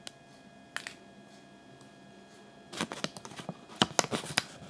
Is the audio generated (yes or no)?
no